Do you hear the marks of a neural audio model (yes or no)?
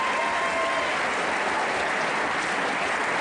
no